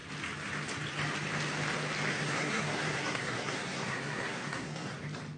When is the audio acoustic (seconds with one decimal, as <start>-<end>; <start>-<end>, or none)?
0.0-2.1; 5.0-5.4